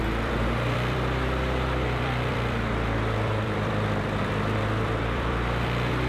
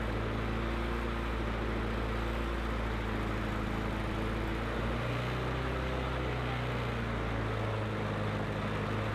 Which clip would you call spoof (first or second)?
first